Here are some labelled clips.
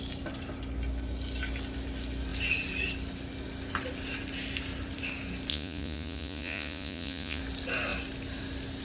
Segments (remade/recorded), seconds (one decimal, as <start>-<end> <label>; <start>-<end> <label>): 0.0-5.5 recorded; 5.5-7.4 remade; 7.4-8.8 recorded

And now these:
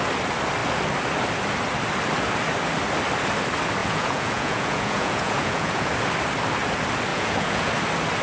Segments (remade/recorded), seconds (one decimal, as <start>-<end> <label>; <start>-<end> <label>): 0.0-3.8 recorded; 3.8-5.9 remade; 5.9-7.1 recorded; 7.1-7.7 remade; 7.7-8.2 recorded

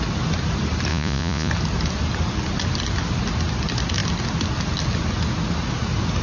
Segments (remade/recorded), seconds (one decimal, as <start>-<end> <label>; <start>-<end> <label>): 0.0-0.9 recorded; 0.9-1.5 remade; 1.5-6.2 recorded

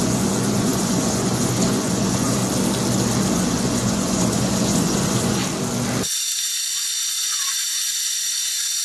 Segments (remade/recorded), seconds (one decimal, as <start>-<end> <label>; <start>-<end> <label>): 0.0-2.4 remade; 2.4-3.3 recorded; 3.3-5.4 remade; 5.4-7.1 recorded; 7.1-8.8 remade